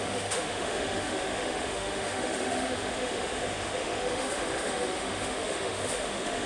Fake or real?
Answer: fake